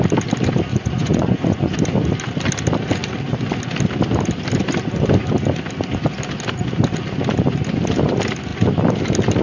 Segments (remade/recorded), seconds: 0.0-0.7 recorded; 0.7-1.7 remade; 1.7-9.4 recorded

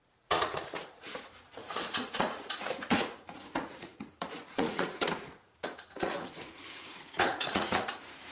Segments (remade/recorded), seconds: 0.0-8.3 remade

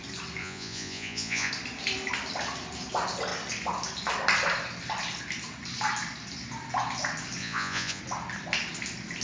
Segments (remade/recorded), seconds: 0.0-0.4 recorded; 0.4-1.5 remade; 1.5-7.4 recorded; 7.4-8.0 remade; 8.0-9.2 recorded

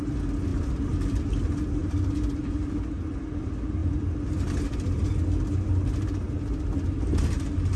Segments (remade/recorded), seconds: 0.0-7.8 recorded

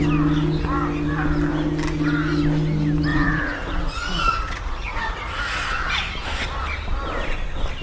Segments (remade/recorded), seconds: 0.0-3.1 recorded; 3.1-5.9 remade; 5.9-7.8 recorded